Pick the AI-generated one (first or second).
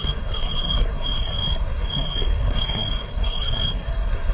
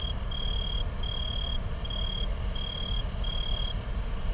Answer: first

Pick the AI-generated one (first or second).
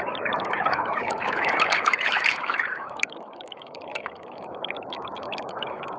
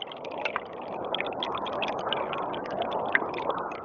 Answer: first